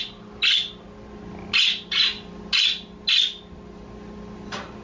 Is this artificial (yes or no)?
no